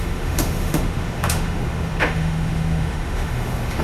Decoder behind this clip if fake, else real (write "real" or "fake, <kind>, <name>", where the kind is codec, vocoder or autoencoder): fake, autoencoder, DAC-VAE